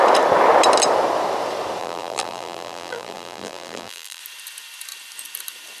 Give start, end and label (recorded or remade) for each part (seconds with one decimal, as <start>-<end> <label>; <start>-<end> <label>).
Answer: 0.0-1.8 recorded; 1.8-4.2 remade; 4.2-5.8 recorded